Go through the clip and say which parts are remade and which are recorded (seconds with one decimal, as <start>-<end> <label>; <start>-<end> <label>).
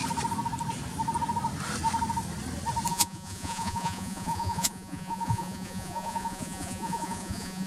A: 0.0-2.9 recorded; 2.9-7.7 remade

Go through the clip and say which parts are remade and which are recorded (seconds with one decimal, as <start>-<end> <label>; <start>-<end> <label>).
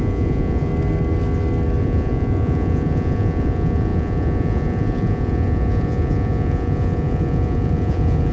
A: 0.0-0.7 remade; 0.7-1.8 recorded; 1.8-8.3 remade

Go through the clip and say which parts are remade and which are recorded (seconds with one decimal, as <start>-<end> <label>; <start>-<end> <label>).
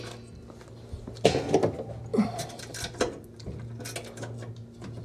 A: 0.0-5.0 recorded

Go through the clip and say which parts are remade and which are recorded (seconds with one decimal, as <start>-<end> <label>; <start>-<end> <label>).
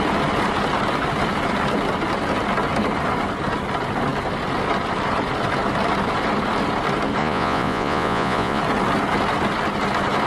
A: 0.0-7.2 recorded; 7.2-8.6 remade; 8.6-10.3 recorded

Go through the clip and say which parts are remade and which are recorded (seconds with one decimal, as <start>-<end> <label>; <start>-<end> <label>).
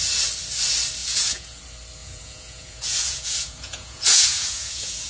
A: 0.0-1.0 recorded; 1.0-1.6 remade; 1.6-2.0 recorded; 2.0-5.1 remade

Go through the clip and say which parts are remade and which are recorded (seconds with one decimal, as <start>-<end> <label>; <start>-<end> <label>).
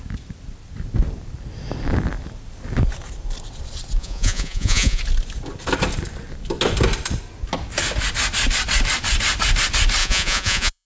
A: 0.0-4.0 recorded; 4.0-5.0 remade; 5.0-10.0 recorded; 10.0-10.9 remade